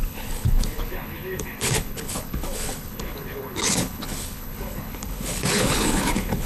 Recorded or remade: remade